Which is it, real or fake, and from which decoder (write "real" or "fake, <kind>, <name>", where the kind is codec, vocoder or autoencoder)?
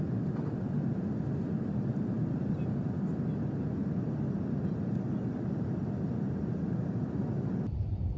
real